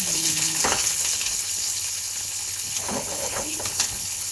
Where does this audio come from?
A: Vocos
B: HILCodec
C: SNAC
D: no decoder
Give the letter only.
B